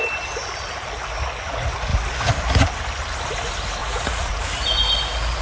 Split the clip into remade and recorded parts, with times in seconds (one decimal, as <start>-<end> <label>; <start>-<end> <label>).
0.0-3.8 recorded; 3.8-4.4 remade; 4.4-5.4 recorded